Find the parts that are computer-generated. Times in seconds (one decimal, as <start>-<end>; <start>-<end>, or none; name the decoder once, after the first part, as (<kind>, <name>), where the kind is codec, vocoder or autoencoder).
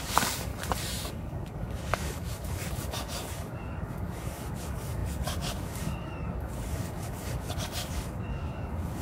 0.0-0.5 (codec, DAC); 1.1-9.0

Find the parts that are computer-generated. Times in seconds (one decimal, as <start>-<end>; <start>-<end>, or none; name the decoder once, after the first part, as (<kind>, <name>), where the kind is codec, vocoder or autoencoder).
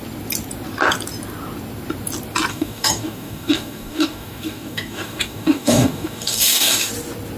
2.5-6.9 (codec, DAC)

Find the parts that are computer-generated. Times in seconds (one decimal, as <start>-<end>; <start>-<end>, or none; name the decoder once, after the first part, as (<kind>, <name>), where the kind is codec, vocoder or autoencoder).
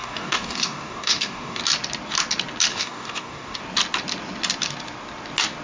0.0-1.6 (codec, DAC); 2.7-3.6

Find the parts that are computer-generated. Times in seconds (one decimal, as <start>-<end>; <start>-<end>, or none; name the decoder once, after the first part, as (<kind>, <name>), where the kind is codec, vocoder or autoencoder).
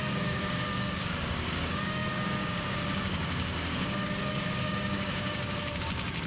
0.0-6.3 (codec, DAC)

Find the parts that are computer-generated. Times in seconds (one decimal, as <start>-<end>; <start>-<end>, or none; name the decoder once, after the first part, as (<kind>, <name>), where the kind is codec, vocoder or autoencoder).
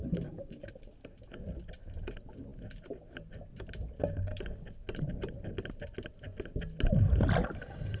0.0-0.7 (codec, DAC)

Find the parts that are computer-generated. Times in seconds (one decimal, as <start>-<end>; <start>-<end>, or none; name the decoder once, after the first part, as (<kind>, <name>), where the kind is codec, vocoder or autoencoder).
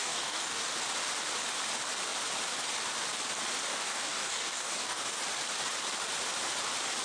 0.0-0.6 (codec, DAC); 3.7-5.2